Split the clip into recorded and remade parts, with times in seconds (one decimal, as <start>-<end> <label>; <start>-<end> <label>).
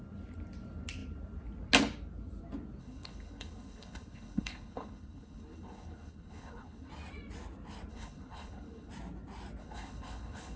0.0-2.8 recorded; 2.8-6.9 remade; 6.9-7.9 recorded; 7.9-8.9 remade; 8.9-9.6 recorded; 9.6-10.6 remade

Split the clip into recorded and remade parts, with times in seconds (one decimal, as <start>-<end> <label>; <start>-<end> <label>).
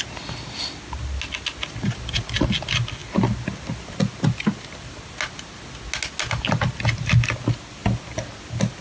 0.0-8.8 recorded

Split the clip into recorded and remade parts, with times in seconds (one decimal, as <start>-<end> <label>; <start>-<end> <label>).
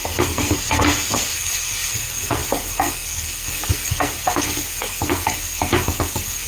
0.0-6.5 remade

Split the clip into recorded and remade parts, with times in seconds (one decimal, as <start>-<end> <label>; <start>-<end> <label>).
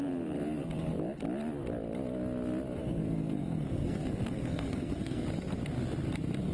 0.0-2.8 recorded; 2.8-5.2 remade; 5.2-6.5 recorded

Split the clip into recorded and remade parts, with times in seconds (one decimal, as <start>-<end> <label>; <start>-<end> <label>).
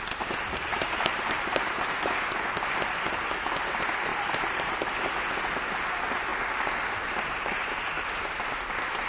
0.0-0.7 recorded; 0.7-2.0 remade; 2.0-4.1 recorded; 4.1-4.7 remade; 4.7-9.1 recorded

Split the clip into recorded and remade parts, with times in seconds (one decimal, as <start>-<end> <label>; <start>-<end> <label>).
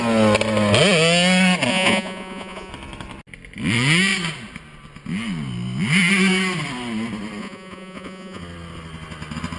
0.0-1.7 recorded; 1.7-2.7 remade; 2.7-7.4 recorded; 7.4-8.4 remade; 8.4-9.6 recorded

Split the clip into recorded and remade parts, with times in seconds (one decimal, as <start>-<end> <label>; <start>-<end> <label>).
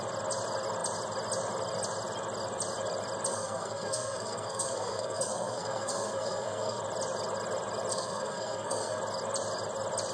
0.0-3.3 recorded; 3.3-6.8 remade; 6.8-7.9 recorded; 7.9-9.0 remade; 9.0-10.1 recorded